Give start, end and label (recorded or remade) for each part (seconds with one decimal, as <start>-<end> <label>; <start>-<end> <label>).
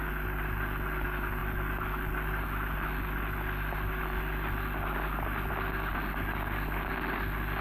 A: 0.0-7.6 recorded